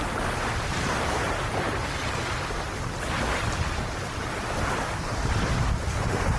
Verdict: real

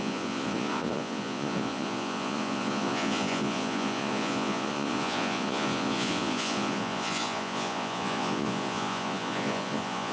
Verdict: fake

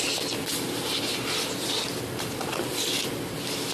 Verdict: real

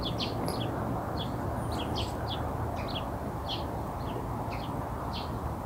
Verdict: real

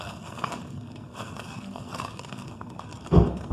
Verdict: fake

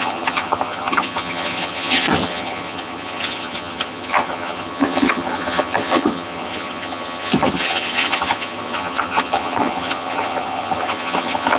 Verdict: fake